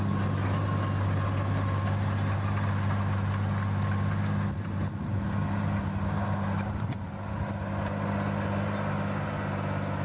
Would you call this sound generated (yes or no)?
no